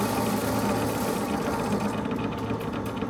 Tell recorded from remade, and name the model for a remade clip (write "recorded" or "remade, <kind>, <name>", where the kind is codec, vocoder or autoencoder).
recorded